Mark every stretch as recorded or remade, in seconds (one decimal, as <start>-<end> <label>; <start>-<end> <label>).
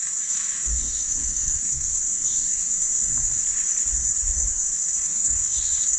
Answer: 0.0-3.4 remade; 3.4-4.5 recorded; 4.5-6.0 remade